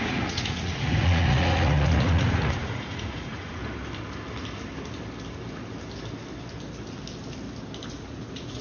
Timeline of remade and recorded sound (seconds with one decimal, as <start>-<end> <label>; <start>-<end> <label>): 0.0-3.6 remade; 3.6-7.9 recorded; 7.9-8.6 remade